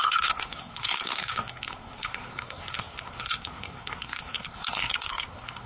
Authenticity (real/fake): fake